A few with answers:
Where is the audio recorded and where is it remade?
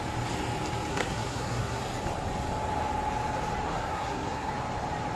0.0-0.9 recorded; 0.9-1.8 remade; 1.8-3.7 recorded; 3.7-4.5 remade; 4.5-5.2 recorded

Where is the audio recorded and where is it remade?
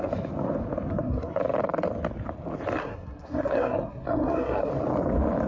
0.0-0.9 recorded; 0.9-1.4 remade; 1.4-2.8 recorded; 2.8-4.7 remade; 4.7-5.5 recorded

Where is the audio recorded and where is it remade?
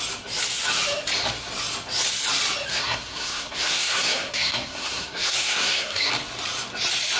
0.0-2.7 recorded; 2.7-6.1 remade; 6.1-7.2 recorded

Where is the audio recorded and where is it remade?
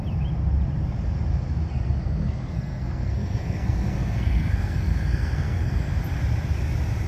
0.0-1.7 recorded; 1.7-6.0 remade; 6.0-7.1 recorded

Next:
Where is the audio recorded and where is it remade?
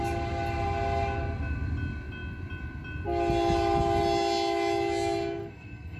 0.0-5.4 recorded; 5.4-6.0 remade